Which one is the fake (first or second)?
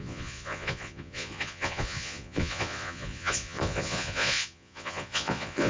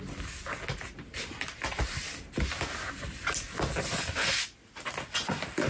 first